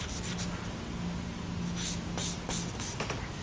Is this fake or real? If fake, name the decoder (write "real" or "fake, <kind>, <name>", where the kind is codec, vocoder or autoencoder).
real